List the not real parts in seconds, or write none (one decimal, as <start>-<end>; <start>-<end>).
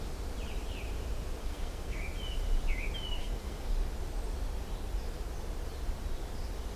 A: 1.4-2.0; 3.2-3.7